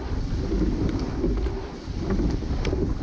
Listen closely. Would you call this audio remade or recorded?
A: recorded